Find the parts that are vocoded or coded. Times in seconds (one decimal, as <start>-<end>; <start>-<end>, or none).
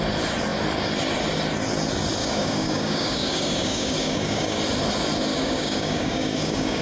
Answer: 2.2-4.6; 5.3-6.8